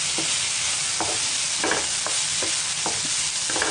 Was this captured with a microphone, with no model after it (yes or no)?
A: yes